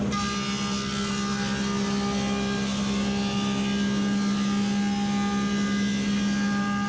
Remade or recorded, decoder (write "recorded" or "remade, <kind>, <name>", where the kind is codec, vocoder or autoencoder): recorded